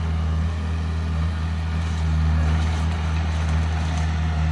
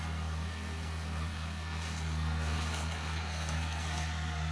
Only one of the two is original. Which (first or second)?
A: first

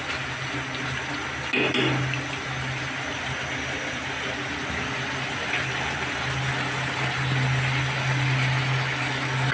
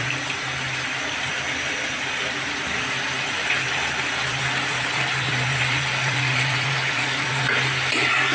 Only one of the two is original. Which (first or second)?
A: first